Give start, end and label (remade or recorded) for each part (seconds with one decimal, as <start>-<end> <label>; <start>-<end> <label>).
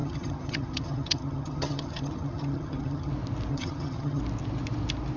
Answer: 0.0-3.1 remade; 3.1-3.5 recorded; 3.5-4.2 remade; 4.2-5.2 recorded